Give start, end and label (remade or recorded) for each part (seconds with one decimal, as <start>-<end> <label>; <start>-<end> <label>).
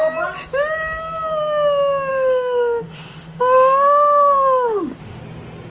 0.0-2.1 recorded; 2.1-5.2 remade; 5.2-5.7 recorded